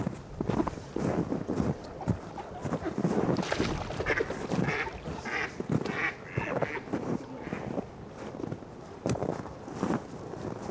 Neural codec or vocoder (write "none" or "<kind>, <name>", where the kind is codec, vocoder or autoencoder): none